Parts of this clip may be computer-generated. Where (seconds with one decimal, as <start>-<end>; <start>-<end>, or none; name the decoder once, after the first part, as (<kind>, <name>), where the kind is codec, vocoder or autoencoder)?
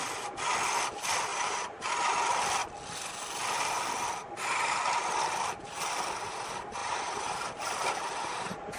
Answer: 1.3-1.9 (vocoder, BigVGAN v2); 6.8-8.8